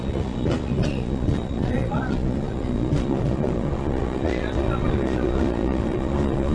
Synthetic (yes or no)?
yes